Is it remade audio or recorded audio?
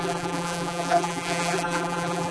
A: remade